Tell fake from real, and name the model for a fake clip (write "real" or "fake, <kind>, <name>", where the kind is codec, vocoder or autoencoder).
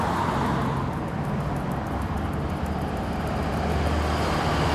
real